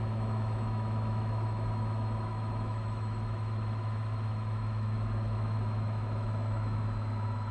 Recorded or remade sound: remade